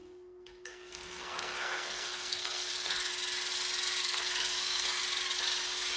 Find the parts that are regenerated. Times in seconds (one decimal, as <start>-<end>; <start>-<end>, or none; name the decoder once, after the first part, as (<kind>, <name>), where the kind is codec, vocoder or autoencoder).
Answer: 0.0-3.1 (codec, SNAC); 4.0-5.0